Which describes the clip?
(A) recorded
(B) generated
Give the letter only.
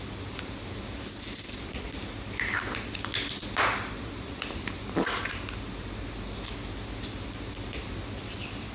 A